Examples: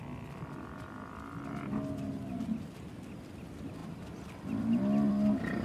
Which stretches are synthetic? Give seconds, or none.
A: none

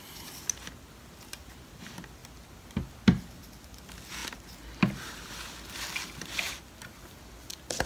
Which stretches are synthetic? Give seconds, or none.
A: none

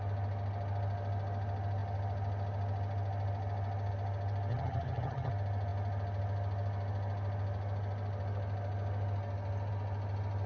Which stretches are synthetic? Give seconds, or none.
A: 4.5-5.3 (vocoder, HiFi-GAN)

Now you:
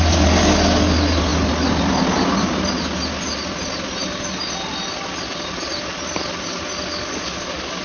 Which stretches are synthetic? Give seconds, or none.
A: 6.9-7.8 (codec, DAC)